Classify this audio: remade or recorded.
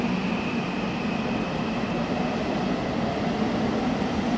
recorded